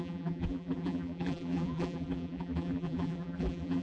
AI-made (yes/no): yes